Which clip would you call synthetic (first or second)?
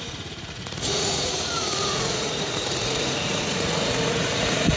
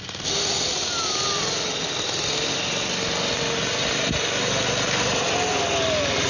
first